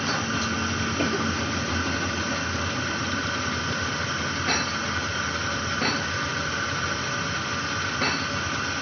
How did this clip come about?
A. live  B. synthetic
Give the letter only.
A